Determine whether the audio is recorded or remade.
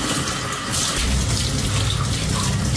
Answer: recorded